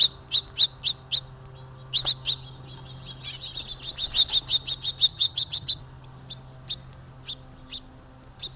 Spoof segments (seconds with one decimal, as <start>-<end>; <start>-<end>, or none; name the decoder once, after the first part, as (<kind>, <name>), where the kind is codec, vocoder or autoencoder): 5.1-5.8 (vocoder, HiFi-GAN)